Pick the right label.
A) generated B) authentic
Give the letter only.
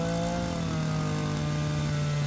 B